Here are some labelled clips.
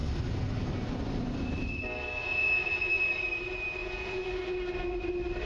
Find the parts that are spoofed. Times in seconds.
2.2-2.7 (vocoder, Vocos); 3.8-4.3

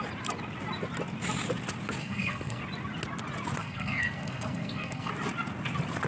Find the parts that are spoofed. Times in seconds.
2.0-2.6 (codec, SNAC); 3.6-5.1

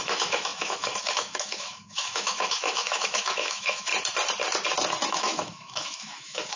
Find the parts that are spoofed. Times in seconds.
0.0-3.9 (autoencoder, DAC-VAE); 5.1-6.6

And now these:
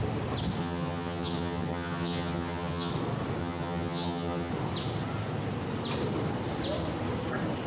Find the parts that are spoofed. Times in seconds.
0.6-2.9 (vocoder, HiFi-GAN); 3.4-4.5

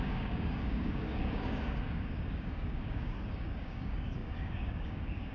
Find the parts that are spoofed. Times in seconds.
0.0-5.3 (codec, DAC)